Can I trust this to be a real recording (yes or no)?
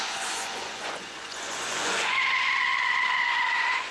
no